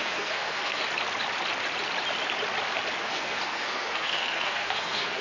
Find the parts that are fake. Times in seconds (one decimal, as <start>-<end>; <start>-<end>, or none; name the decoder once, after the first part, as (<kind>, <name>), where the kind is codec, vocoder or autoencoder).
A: 0.0-0.8 (codec, SNAC); 3.0-5.2